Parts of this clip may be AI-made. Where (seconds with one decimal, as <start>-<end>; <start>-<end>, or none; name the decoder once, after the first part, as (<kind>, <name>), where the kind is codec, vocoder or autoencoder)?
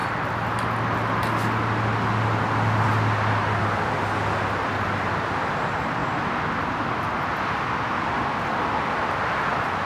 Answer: none